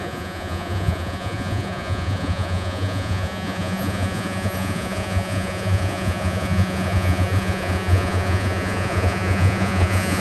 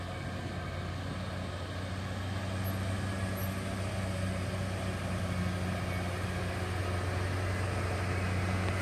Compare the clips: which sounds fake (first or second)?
first